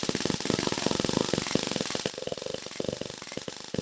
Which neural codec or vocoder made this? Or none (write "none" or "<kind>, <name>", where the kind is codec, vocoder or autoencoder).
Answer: none